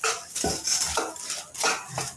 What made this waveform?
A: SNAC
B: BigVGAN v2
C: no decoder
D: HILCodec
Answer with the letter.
C